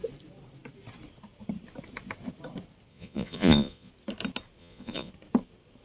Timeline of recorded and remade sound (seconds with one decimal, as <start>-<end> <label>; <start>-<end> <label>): 0.0-2.9 recorded; 2.9-3.9 remade; 3.9-4.6 recorded; 4.6-5.1 remade; 5.1-5.8 recorded